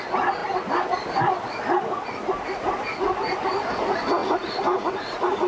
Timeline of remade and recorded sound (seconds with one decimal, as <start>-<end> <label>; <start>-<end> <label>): 0.0-5.5 recorded